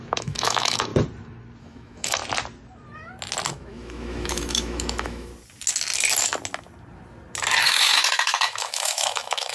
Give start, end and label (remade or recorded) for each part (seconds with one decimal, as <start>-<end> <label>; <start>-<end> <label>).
0.0-0.9 remade; 0.9-1.6 recorded; 1.6-2.2 remade; 2.2-3.5 recorded; 3.5-5.3 remade; 5.3-7.6 recorded; 7.6-9.5 remade